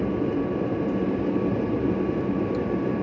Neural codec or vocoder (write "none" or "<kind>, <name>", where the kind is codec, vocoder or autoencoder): none